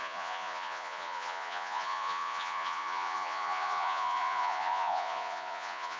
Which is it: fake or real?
fake